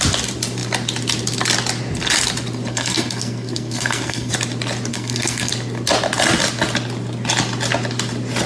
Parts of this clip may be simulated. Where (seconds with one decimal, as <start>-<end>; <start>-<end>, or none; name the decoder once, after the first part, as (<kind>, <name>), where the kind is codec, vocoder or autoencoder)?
2.7-4.3 (codec, SNAC); 4.9-5.5